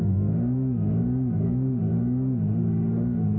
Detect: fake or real fake